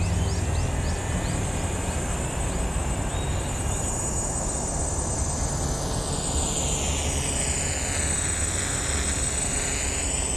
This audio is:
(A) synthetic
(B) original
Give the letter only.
B